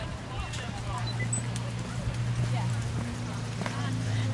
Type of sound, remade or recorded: recorded